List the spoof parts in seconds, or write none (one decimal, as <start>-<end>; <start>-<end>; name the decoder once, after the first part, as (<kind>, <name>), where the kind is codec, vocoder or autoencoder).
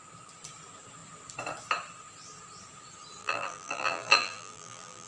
3.2-5.1 (vocoder, BigVGAN v2)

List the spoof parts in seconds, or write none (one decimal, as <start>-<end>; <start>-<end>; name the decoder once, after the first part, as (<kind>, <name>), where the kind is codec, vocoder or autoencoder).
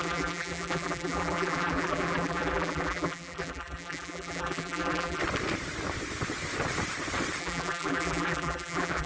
0.0-5.2 (vocoder, BigVGAN v2); 7.4-9.1